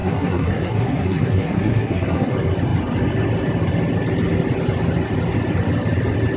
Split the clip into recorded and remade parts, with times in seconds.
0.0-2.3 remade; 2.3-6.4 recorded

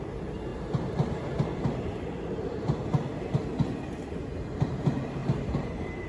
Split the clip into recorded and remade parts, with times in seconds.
0.0-5.2 recorded; 5.2-6.1 remade

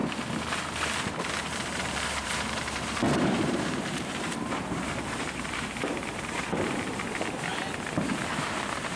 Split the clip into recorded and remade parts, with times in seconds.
0.0-1.4 recorded; 1.4-7.5 remade; 7.5-8.3 recorded; 8.3-9.0 remade

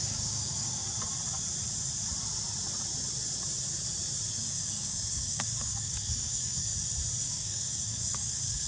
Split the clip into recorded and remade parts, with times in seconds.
0.0-0.8 remade; 0.8-4.3 recorded; 4.3-6.7 remade; 6.7-7.2 recorded; 7.2-8.7 remade

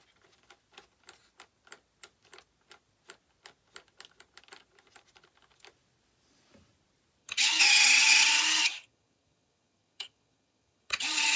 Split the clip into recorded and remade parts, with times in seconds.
0.0-7.2 recorded; 7.2-11.4 remade

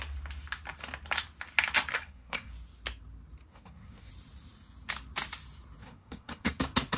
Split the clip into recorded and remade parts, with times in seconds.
0.0-1.9 recorded; 1.9-2.5 remade; 2.5-3.5 recorded; 3.5-4.1 remade; 4.1-5.8 recorded; 5.8-6.6 remade; 6.6-7.0 recorded

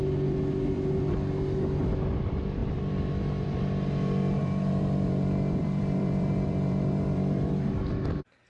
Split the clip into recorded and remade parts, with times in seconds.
0.0-2.6 recorded; 2.6-7.7 remade; 7.7-8.5 recorded